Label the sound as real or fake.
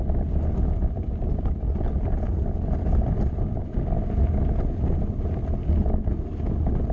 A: real